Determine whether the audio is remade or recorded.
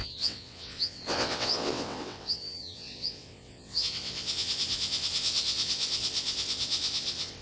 remade